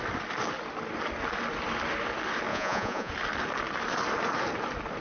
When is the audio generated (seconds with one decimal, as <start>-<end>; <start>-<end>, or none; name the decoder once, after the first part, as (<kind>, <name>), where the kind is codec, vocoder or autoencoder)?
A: 2.5-3.1 (vocoder, Vocos)